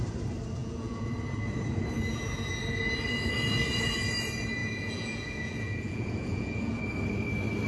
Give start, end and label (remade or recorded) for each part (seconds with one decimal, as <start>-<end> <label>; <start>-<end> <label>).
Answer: 0.0-0.6 recorded; 0.6-1.1 remade; 1.1-4.6 recorded; 4.6-6.8 remade; 6.8-7.7 recorded